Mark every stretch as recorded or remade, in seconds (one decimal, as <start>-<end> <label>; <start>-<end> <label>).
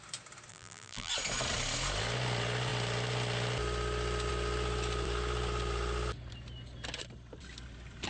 0.0-0.5 recorded; 0.5-1.1 remade; 1.1-8.1 recorded